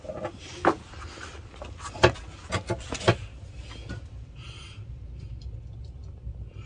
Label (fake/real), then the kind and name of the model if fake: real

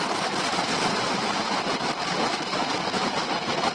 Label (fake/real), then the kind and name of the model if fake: real